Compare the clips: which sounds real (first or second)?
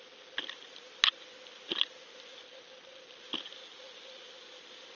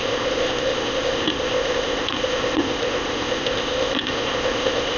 first